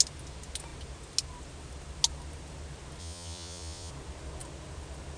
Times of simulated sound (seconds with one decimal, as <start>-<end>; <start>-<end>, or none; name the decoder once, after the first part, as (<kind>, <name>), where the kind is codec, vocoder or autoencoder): 3.0-3.9 (vocoder, Vocos)

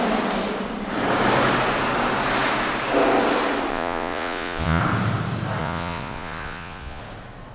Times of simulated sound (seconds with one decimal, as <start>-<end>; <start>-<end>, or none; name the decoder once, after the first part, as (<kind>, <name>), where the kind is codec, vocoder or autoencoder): 3.7-4.8 (vocoder, Vocos); 5.6-7.0

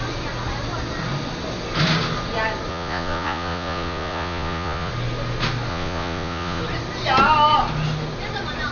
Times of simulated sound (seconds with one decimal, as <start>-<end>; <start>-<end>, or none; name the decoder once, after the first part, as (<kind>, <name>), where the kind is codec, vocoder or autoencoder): 2.7-4.9 (vocoder, Vocos); 5.7-6.6

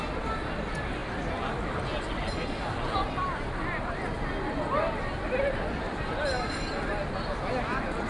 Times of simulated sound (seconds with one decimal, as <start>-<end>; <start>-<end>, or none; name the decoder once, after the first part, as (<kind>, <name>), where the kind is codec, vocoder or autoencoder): none

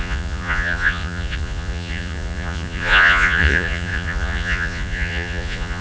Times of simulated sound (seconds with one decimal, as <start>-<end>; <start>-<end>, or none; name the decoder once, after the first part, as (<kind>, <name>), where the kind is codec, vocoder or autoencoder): 0.0-5.8 (vocoder, Vocos)